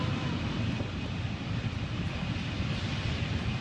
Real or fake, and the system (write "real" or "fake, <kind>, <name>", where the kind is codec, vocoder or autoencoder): real